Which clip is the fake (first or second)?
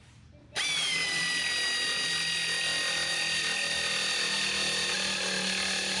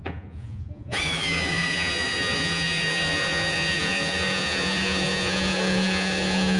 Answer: second